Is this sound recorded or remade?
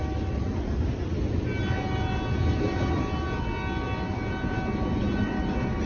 recorded